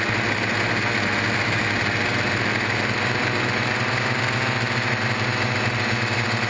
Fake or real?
real